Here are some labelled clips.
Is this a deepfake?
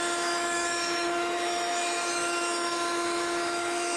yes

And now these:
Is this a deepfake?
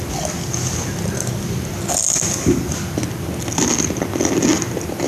no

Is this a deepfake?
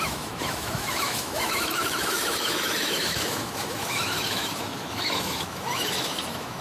yes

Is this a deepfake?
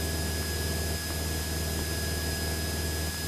no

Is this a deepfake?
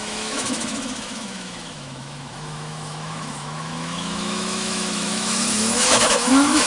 yes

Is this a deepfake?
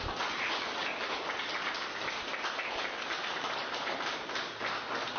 no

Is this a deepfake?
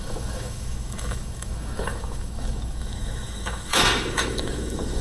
yes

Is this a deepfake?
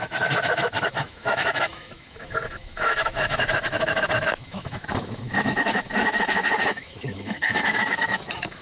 yes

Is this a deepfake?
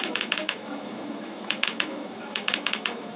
yes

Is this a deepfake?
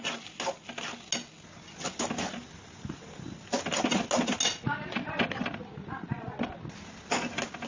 no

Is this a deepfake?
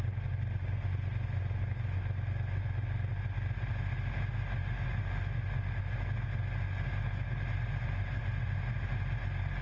no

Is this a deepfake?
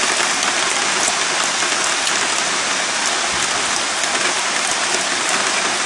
no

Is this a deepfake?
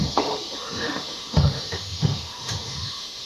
yes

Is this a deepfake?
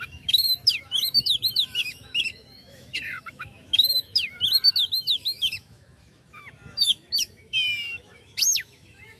yes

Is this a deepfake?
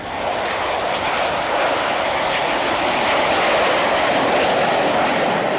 no